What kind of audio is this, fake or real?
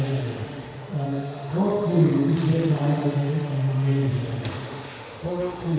fake